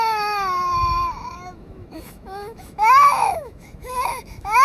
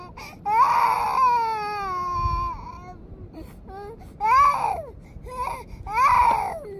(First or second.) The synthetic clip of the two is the first